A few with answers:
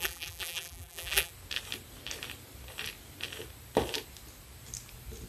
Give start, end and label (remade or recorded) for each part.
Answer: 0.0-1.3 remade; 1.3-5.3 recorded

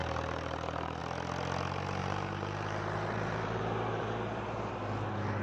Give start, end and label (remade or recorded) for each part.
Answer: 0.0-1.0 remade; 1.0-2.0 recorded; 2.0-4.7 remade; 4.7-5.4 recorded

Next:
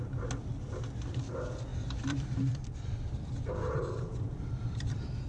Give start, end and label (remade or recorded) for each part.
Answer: 0.0-1.7 recorded; 1.7-5.3 remade

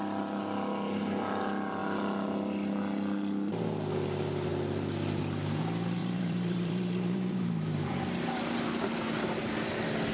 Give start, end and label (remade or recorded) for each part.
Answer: 0.0-6.0 recorded; 6.0-7.9 remade; 7.9-10.1 recorded